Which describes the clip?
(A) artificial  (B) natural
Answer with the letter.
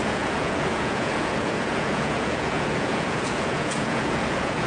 A